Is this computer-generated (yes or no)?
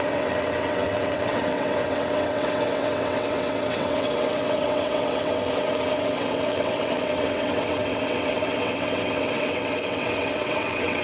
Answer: yes